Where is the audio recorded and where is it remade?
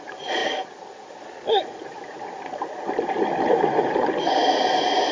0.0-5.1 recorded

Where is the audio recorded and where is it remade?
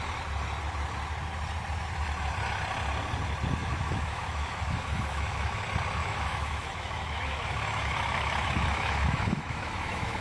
0.0-3.6 recorded; 3.6-5.6 remade; 5.6-6.0 recorded; 6.0-10.2 remade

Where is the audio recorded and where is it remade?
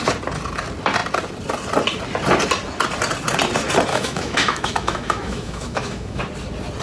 0.0-3.9 recorded; 3.9-6.2 remade; 6.2-6.8 recorded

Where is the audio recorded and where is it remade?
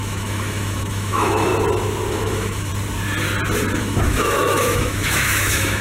0.0-1.5 remade; 1.5-2.1 recorded; 2.1-2.7 remade; 2.7-3.8 recorded; 3.8-5.8 remade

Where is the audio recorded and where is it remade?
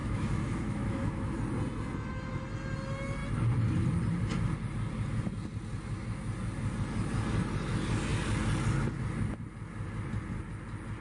0.0-1.4 remade; 1.4-11.0 recorded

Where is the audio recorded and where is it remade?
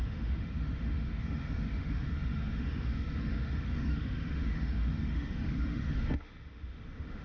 0.0-7.2 remade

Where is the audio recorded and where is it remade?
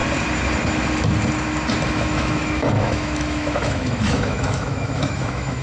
0.0-1.9 recorded; 1.9-5.6 remade